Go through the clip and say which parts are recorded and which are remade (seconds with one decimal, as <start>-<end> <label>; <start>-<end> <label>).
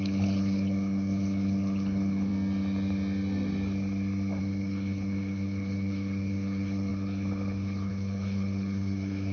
0.0-2.3 remade; 2.3-4.4 recorded; 4.4-9.3 remade